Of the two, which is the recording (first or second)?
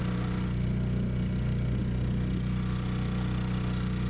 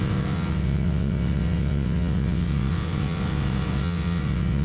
first